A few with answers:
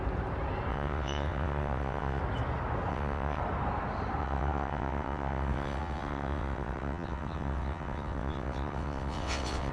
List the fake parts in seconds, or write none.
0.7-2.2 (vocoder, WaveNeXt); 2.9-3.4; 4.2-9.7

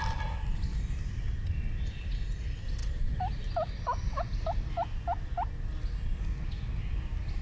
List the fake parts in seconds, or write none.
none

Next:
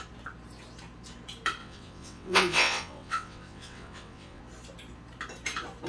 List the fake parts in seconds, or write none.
1.6-4.4 (vocoder, WaveNeXt)